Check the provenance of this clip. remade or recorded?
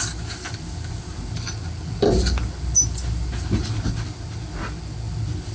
recorded